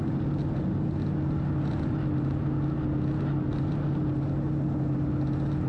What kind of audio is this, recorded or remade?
recorded